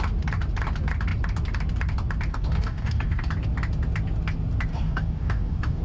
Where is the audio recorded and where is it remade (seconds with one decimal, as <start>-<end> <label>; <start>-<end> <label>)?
0.0-2.3 recorded; 2.3-3.3 remade; 3.3-4.7 recorded; 4.7-5.8 remade